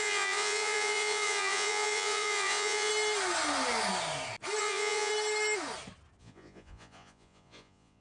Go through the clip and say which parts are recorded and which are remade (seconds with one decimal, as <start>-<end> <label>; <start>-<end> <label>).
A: 0.0-2.9 remade; 2.9-4.6 recorded; 4.6-5.1 remade; 5.1-6.2 recorded; 6.2-8.0 remade